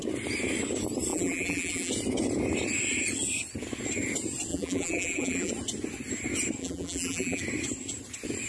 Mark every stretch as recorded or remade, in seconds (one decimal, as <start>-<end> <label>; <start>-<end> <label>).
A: 0.0-1.1 recorded; 1.1-1.9 remade; 1.9-4.5 recorded; 4.5-5.5 remade; 5.5-6.6 recorded; 6.6-7.4 remade; 7.4-8.5 recorded